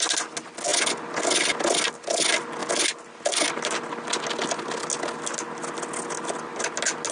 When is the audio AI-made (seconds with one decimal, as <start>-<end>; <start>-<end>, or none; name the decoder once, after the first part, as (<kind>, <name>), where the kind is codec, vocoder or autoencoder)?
none